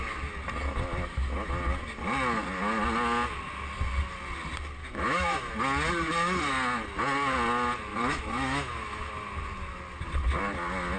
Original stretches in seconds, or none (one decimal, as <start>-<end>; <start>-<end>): 0.0-4.8; 5.5-7.9; 9.1-11.0